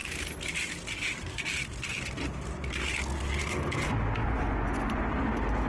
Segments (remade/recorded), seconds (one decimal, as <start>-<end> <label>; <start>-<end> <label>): 0.0-4.2 recorded; 4.2-5.0 remade; 5.0-5.7 recorded